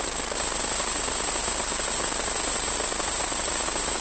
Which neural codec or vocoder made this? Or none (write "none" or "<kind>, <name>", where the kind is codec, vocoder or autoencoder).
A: none